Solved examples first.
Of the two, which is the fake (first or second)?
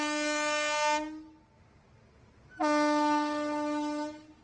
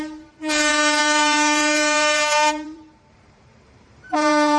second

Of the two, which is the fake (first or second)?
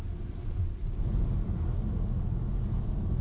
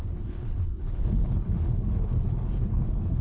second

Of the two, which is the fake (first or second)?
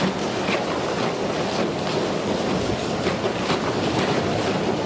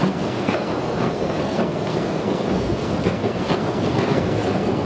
second